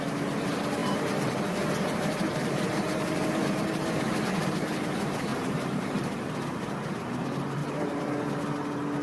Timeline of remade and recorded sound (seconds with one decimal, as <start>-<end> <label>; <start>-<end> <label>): 0.0-0.8 recorded; 0.8-4.3 remade; 4.3-5.3 recorded; 5.3-6.3 remade; 6.3-7.6 recorded; 7.6-8.2 remade; 8.2-9.0 recorded